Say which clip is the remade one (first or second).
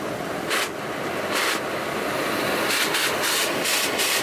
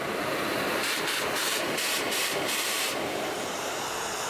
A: second